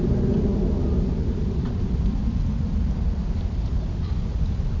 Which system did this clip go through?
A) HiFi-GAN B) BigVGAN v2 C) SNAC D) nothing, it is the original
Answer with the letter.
D